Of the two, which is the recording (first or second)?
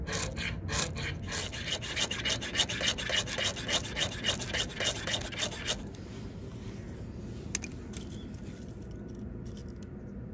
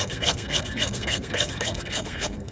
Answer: first